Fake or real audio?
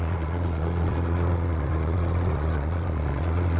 fake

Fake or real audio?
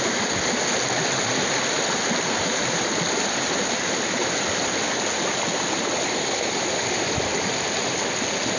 real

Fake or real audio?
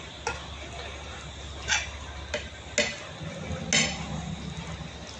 real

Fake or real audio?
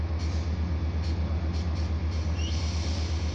real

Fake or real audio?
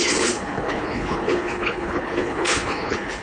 fake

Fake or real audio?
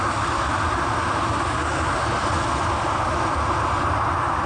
real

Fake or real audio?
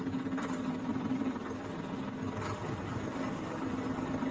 real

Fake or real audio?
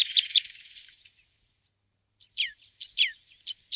fake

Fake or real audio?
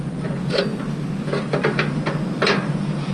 real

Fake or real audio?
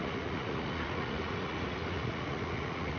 fake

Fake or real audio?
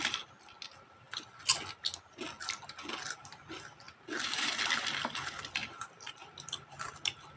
real